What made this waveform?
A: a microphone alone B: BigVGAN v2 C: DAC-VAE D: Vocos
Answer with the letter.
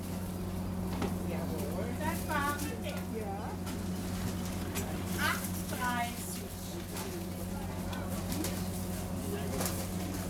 A